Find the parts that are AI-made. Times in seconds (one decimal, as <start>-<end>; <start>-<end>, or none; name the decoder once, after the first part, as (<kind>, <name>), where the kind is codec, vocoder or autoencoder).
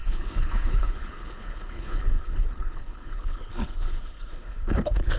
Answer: 0.0-5.2 (codec, HILCodec)